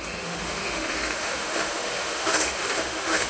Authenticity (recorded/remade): remade